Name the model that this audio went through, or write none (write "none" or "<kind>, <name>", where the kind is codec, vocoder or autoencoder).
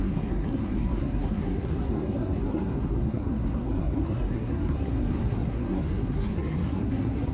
codec, SNAC